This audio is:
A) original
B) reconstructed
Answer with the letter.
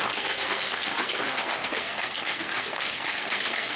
B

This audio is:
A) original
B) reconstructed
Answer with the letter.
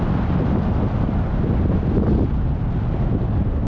B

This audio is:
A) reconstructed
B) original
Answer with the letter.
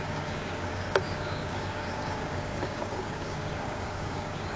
A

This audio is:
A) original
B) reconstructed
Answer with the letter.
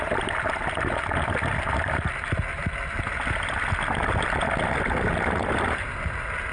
A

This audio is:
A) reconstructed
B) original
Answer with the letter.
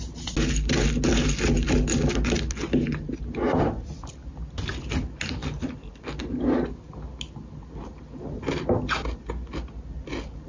B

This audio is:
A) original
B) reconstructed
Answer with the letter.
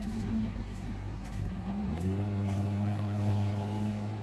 B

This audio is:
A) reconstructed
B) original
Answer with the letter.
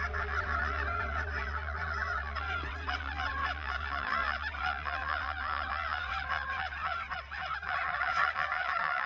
A